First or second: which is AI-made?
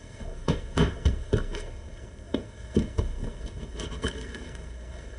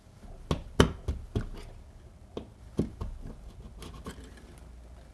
first